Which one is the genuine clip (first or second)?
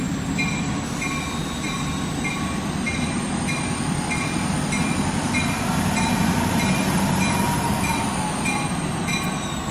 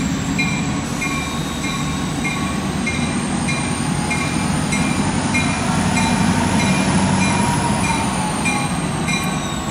second